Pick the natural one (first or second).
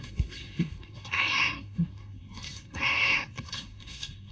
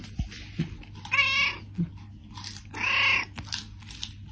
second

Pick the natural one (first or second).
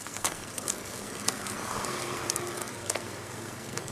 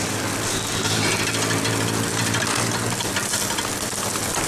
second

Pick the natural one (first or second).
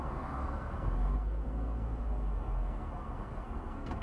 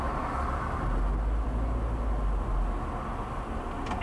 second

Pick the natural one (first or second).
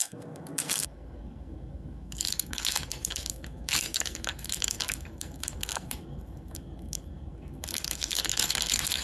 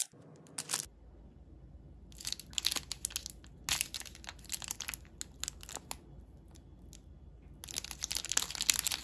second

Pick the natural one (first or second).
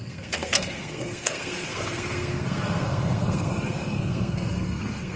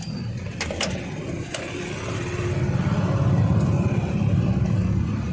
second